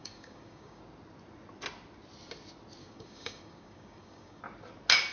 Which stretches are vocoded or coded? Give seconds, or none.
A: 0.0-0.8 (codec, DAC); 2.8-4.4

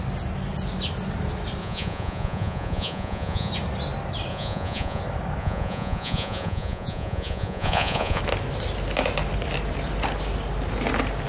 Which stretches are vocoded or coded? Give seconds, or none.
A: 1.6-3.5 (vocoder, Vocos); 4.3-5.0; 5.4-8.2

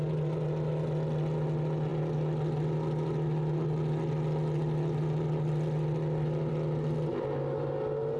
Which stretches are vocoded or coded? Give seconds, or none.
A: none

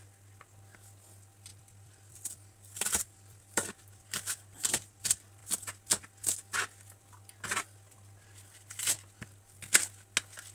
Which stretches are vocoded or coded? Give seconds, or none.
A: 1.5-5.0 (vocoder, BigVGAN v2)